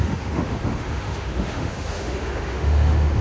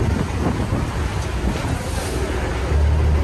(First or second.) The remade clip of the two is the first